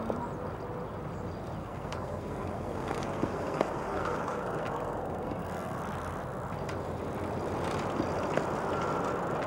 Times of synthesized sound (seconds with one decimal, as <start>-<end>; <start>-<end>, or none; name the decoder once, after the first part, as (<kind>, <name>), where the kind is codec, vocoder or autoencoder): 1.6-5.8 (codec, SNAC)